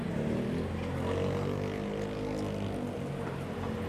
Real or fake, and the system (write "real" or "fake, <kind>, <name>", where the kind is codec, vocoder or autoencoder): real